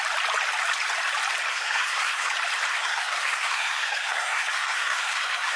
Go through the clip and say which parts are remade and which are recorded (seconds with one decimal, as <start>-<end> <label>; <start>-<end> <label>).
0.0-1.5 recorded; 1.5-2.3 remade; 2.3-2.7 recorded; 2.7-5.6 remade